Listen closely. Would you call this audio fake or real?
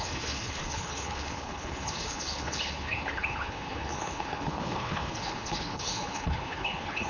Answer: fake